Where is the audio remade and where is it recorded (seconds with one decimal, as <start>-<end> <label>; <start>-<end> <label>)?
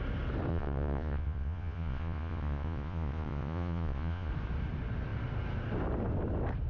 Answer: 0.0-0.5 recorded; 0.5-4.3 remade; 4.3-6.7 recorded